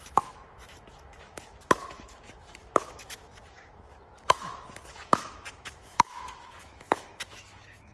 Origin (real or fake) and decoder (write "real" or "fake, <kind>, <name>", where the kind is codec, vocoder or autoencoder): fake, autoencoder, DAC-VAE